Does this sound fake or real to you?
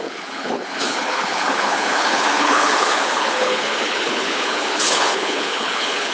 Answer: fake